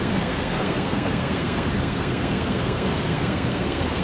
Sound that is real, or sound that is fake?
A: fake